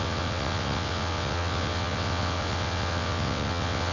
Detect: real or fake fake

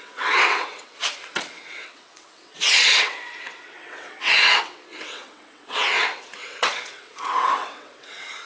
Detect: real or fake fake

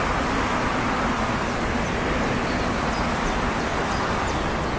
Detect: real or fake real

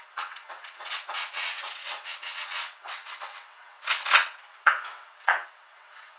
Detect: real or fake fake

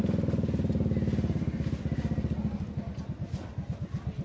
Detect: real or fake real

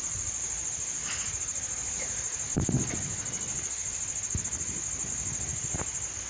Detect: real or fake real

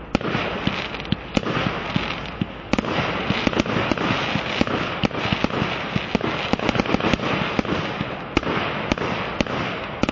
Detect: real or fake real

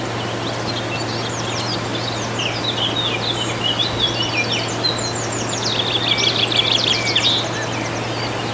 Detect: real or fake real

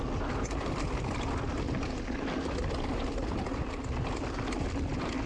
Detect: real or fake real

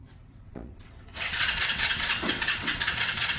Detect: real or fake fake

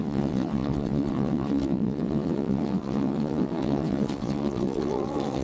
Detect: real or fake fake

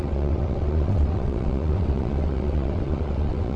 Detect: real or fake fake